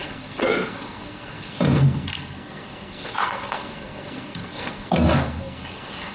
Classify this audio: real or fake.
fake